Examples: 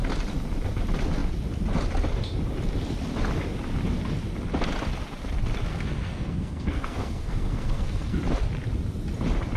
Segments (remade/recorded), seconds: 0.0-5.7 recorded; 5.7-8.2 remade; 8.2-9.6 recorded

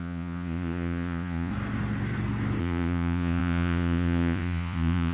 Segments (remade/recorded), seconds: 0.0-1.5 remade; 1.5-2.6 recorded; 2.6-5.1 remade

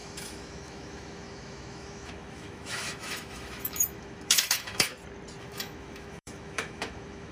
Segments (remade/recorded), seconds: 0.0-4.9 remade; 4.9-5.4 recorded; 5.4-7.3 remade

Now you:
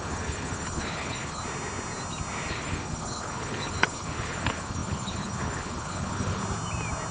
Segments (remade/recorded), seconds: 0.0-1.4 remade; 1.4-2.5 recorded; 2.5-6.4 remade; 6.4-7.1 recorded